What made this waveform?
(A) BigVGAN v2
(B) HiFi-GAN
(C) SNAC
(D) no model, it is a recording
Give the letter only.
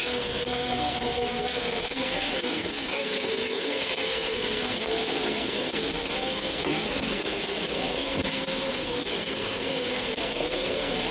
C